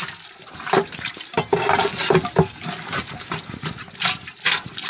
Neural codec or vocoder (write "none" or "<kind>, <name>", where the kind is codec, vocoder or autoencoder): none